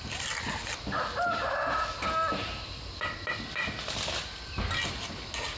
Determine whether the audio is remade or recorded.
recorded